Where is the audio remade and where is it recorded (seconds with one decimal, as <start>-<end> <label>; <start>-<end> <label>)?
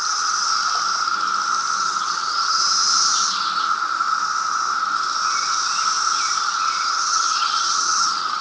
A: 0.0-0.5 remade; 0.5-1.8 recorded; 1.8-2.6 remade; 2.6-6.8 recorded; 6.8-8.4 remade